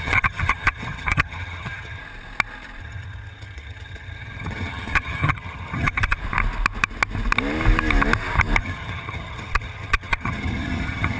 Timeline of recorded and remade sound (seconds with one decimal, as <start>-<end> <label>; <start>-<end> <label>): 0.0-2.0 remade; 2.0-2.8 recorded; 2.8-6.2 remade; 6.2-8.6 recorded; 8.6-11.2 remade